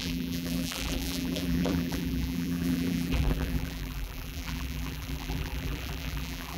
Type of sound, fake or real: fake